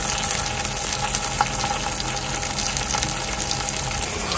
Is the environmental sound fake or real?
real